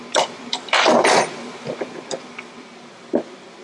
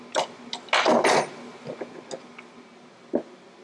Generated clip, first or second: first